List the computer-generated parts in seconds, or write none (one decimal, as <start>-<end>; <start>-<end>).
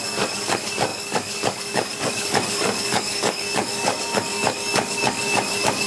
0.0-5.9